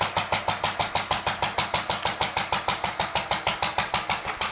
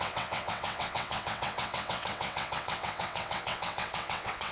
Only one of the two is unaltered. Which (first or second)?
first